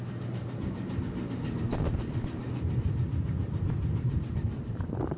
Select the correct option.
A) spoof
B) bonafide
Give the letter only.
B